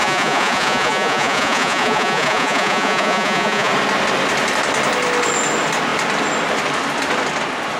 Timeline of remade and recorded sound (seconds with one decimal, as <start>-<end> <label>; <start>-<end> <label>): 0.0-3.7 remade; 3.7-7.8 recorded